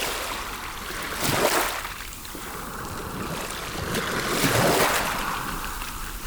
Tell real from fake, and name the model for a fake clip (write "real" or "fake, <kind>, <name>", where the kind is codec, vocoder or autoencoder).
fake, vocoder, BigVGAN v2